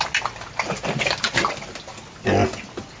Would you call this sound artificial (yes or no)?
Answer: no